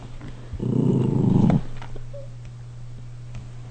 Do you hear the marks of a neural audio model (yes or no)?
no